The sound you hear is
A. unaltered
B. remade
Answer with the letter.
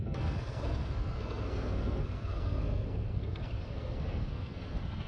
B